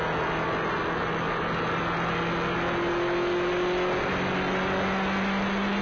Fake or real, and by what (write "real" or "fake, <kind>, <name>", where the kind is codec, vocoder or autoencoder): real